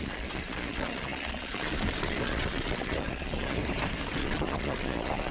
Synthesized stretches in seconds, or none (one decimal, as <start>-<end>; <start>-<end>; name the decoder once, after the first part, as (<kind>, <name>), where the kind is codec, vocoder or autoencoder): 0.0-3.6 (vocoder, Vocos); 4.2-5.3